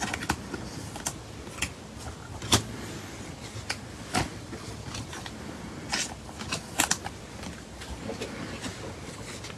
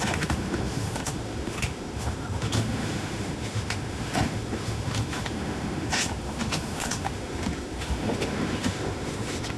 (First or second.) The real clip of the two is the first